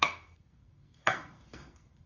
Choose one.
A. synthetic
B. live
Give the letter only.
A